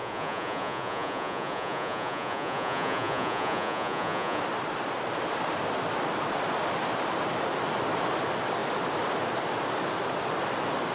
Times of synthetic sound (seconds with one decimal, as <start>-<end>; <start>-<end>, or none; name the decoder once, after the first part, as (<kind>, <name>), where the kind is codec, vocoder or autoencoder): 0.0-4.4 (vocoder, Vocos)